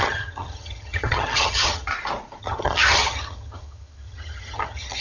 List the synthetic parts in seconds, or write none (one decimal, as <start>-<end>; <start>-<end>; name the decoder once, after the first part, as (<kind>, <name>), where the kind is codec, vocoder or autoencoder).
0.0-1.9 (vocoder, HiFi-GAN); 2.4-5.0